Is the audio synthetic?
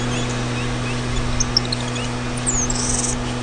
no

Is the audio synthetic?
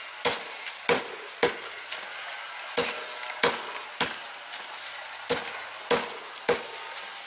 no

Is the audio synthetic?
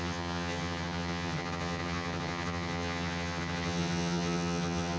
yes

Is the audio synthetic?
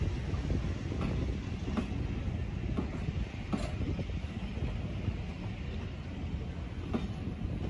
no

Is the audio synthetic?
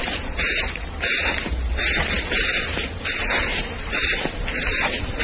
yes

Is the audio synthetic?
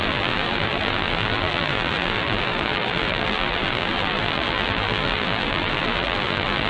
yes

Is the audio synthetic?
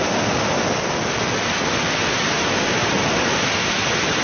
no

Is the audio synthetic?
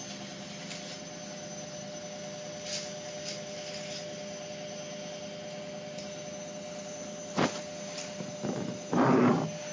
no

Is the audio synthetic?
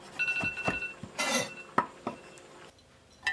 no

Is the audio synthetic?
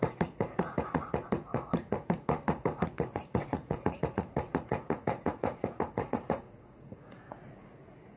yes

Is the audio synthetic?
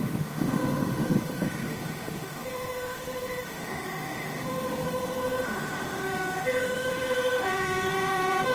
yes